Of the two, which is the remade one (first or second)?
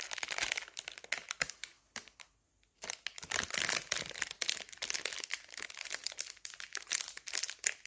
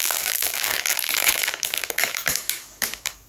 second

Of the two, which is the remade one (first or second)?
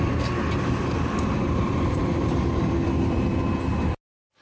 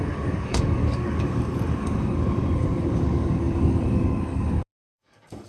second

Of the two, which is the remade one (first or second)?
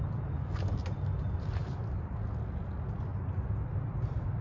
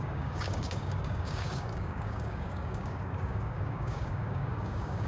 second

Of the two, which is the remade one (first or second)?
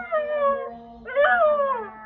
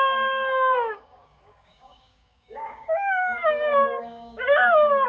second